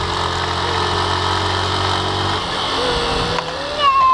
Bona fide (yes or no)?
yes